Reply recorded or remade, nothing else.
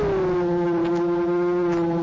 recorded